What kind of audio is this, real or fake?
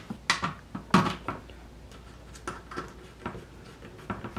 real